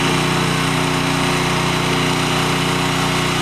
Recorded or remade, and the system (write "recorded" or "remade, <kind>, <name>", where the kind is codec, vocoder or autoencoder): recorded